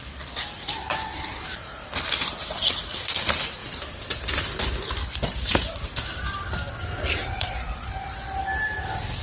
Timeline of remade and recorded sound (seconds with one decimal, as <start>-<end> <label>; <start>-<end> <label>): 0.0-7.2 recorded; 7.2-8.4 remade; 8.4-9.2 recorded